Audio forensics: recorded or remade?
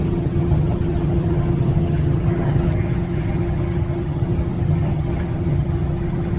remade